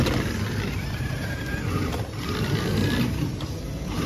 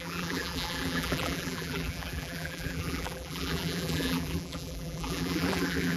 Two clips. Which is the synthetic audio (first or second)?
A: second